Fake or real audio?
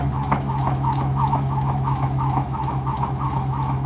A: fake